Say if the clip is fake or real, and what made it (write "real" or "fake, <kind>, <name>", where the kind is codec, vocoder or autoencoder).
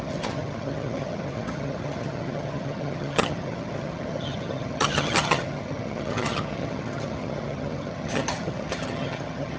fake, vocoder, HiFi-GAN